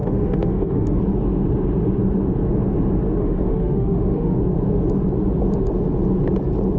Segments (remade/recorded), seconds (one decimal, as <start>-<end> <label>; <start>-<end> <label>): 0.0-1.0 remade; 1.0-3.2 recorded; 3.2-4.4 remade; 4.4-6.8 recorded